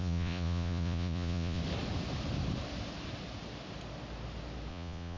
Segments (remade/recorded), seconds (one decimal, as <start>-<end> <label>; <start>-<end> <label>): 0.0-1.6 remade; 1.6-4.7 recorded; 4.7-5.2 remade